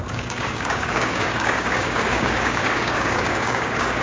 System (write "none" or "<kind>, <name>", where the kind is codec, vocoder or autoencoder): codec, DAC